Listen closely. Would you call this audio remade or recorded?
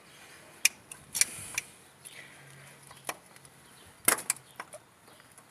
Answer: recorded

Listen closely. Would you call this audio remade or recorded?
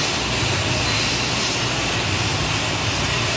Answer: recorded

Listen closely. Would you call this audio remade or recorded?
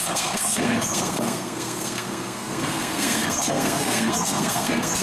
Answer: remade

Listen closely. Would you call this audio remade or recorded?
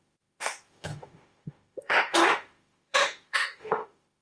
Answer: remade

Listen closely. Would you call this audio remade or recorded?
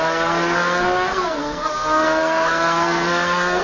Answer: remade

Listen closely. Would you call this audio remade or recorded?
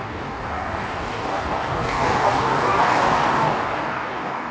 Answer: remade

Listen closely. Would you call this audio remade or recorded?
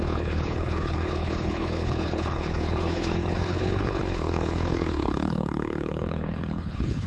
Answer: remade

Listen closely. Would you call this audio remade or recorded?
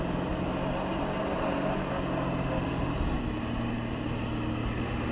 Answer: recorded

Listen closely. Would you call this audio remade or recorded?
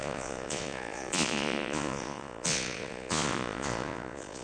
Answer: remade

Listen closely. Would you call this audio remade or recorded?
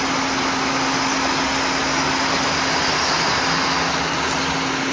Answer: recorded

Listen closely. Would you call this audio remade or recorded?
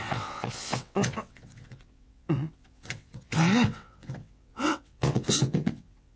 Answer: remade